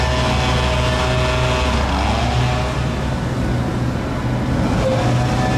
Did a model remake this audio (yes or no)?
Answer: no